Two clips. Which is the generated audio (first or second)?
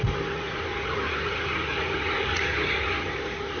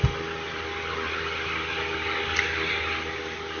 first